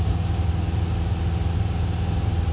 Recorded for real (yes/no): yes